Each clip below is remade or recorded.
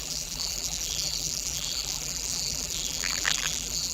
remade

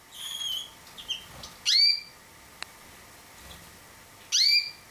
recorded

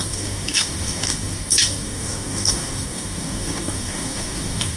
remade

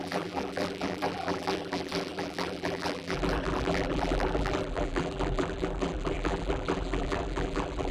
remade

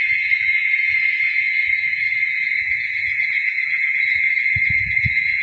remade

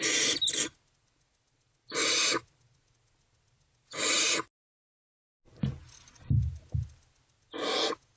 recorded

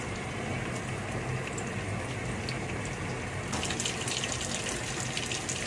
recorded